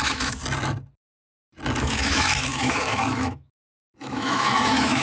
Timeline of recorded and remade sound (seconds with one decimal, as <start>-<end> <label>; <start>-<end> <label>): 0.0-0.4 remade; 0.4-1.8 recorded; 1.8-5.0 remade